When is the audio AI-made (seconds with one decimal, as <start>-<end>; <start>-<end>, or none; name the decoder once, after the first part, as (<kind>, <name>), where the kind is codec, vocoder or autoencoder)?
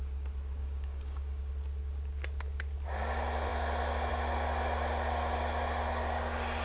0.6-1.5 (codec, DAC)